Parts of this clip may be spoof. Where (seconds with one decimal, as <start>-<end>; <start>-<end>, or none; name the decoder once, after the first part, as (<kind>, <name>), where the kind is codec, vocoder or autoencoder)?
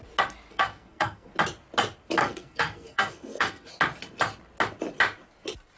0.5-1.3 (codec, SNAC); 2.2-3.7